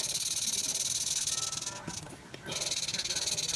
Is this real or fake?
real